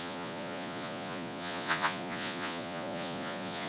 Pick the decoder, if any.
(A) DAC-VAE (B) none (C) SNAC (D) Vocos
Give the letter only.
D